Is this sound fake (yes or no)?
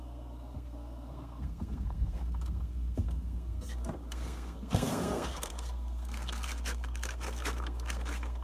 yes